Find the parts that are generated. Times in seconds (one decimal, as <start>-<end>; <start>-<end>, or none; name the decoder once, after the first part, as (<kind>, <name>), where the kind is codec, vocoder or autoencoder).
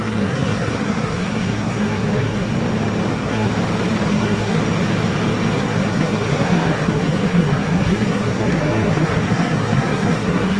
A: 0.0-2.5 (codec, SNAC); 3.1-3.5; 4.1-4.6; 5.5-10.6